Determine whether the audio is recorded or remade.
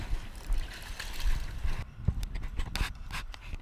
recorded